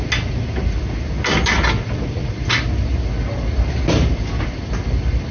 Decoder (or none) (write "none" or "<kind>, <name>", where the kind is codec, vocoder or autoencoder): none